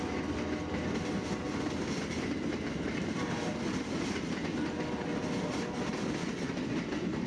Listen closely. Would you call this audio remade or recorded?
recorded